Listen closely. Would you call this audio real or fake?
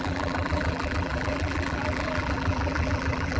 fake